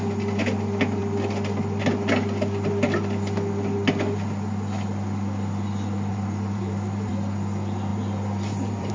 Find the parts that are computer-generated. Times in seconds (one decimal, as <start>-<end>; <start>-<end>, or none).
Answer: 6.1-7.1; 7.9-8.9